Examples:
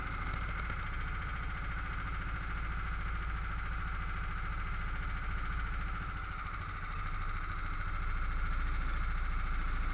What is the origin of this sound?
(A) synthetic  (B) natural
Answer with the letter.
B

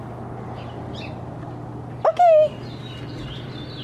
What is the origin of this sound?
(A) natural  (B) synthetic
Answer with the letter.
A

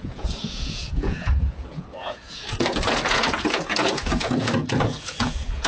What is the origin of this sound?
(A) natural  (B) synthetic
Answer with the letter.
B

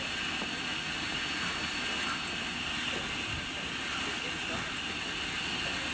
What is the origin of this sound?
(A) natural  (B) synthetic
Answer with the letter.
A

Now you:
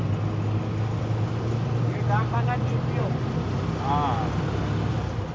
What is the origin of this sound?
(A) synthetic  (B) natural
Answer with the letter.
B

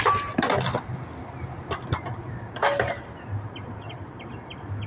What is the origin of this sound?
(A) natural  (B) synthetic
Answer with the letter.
A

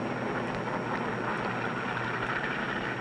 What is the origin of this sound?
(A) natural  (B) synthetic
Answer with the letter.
A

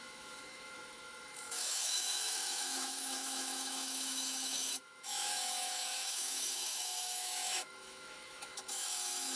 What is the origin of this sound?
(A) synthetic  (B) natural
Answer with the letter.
A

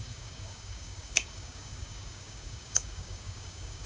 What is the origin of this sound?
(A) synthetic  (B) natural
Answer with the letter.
A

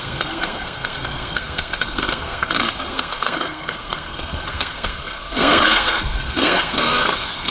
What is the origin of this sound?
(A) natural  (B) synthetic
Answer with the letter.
B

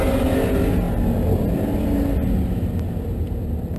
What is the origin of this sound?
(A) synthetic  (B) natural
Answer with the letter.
B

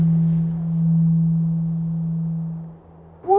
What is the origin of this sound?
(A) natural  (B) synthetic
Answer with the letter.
A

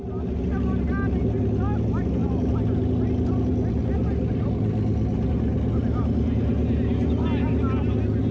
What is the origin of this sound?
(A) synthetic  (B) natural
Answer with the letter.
B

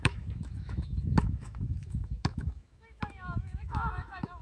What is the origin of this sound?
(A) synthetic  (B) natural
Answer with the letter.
A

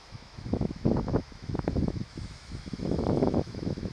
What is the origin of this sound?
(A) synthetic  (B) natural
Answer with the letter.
A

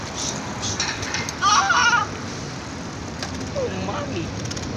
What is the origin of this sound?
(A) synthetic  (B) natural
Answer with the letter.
A